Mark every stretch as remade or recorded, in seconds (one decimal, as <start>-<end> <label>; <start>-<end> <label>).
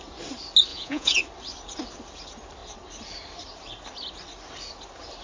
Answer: 0.0-0.7 recorded; 0.7-1.2 remade; 1.2-5.2 recorded